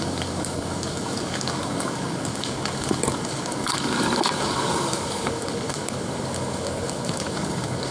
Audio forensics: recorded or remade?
remade